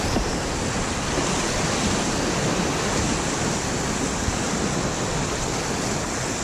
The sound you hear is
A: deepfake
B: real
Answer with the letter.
B